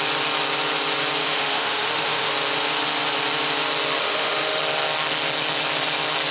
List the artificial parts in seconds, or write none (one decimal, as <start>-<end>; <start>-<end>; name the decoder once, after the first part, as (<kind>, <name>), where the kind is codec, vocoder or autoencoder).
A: 1.2-2.3 (autoencoder, DAC-VAE); 4.0-4.6